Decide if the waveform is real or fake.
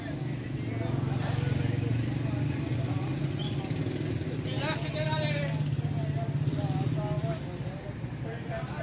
real